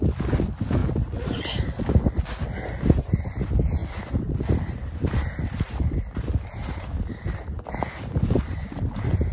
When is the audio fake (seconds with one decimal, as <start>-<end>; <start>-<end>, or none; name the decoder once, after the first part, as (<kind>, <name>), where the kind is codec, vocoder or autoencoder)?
none